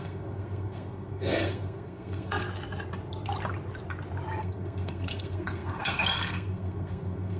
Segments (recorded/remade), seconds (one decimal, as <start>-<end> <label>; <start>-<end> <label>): 0.0-2.4 remade; 2.4-4.4 recorded; 4.4-7.4 remade